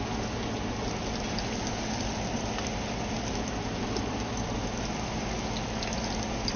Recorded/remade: recorded